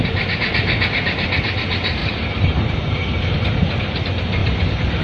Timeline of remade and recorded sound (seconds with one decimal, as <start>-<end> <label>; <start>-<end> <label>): 0.0-2.0 recorded; 2.0-4.0 remade; 4.0-4.4 recorded; 4.4-5.0 remade